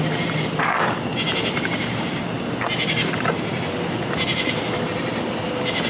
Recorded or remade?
recorded